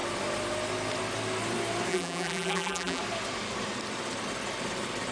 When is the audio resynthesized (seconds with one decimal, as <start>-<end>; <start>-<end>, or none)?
1.9-3.0